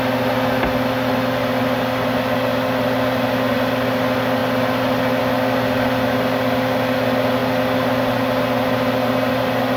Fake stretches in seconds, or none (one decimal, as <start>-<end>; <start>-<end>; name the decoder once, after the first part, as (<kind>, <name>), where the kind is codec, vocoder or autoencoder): none